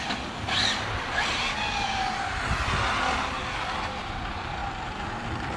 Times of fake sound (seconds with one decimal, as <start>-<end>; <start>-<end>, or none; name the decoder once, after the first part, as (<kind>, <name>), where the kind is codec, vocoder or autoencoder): 0.0-0.6 (vocoder, BigVGAN v2); 4.0-4.6